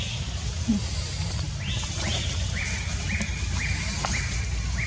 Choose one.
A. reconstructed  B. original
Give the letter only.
B